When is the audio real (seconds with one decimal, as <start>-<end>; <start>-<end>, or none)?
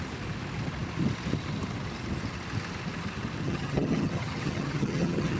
0.0-3.4